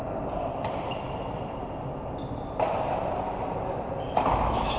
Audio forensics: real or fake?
real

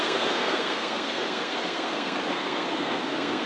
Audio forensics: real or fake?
fake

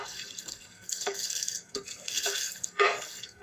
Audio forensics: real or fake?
fake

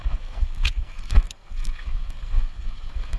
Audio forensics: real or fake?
fake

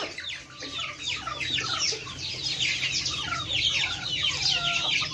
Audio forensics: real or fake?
real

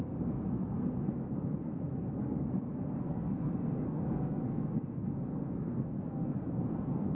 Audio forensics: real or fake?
fake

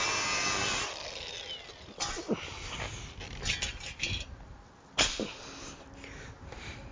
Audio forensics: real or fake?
real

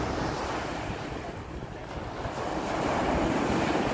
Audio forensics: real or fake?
real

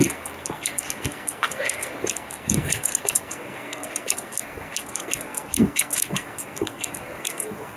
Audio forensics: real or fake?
fake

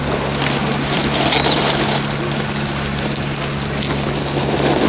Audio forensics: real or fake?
real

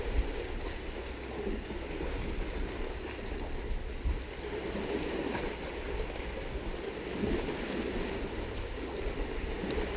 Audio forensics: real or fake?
real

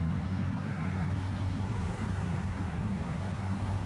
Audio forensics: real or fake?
fake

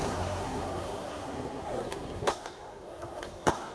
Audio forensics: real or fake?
fake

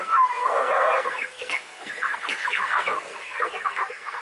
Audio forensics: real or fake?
fake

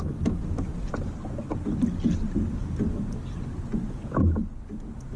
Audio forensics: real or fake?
real